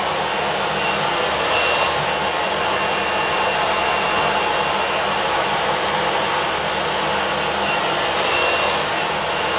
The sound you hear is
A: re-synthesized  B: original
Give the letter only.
B